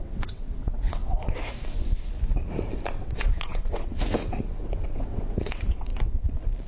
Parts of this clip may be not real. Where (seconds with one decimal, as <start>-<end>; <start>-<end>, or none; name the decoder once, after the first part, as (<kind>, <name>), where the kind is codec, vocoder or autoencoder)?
0.0-1.0 (vocoder, WaveNeXt); 3.0-5.9